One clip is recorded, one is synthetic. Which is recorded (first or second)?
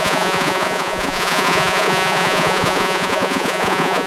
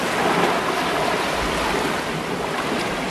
second